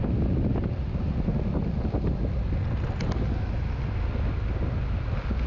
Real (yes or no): yes